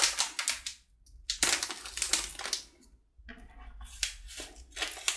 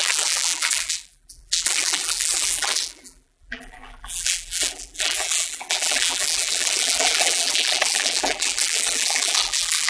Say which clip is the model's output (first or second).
second